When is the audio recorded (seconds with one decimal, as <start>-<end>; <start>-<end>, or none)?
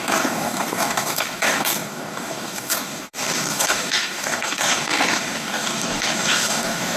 none